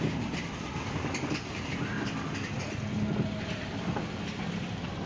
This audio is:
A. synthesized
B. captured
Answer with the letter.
B